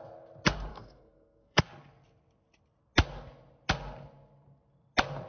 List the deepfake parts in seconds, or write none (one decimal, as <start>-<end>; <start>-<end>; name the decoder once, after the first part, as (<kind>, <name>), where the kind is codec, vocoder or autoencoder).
0.7-1.6 (codec, SNAC)